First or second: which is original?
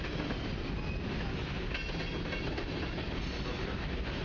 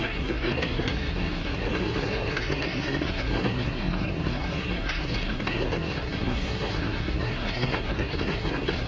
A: first